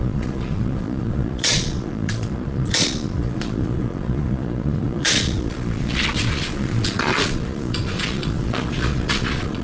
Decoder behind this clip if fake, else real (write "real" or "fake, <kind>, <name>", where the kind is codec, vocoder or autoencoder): fake, vocoder, Vocos